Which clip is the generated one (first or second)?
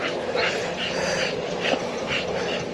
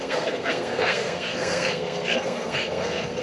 second